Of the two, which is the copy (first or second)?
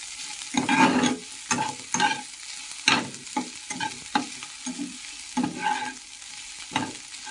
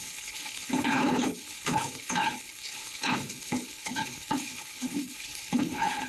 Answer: second